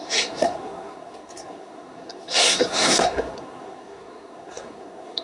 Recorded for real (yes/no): no